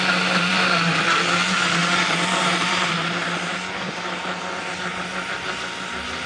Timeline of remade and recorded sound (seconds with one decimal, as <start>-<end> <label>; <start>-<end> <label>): 0.0-6.3 recorded